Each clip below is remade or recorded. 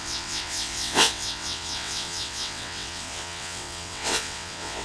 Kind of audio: remade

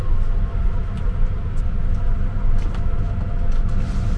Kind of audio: recorded